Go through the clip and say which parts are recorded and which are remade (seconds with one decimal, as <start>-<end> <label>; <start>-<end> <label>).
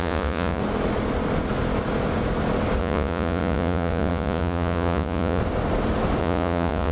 0.0-0.6 remade; 0.6-2.8 recorded; 2.8-5.4 remade; 5.4-6.2 recorded; 6.2-6.9 remade